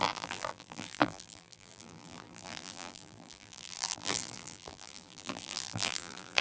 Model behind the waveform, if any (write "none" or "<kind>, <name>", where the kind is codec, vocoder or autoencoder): vocoder, BigVGAN v2